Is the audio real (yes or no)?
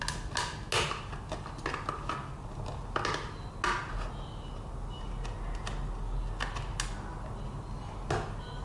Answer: yes